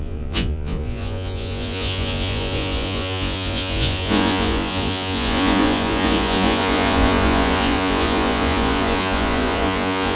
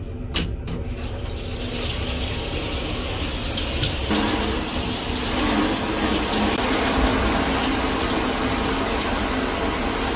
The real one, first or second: second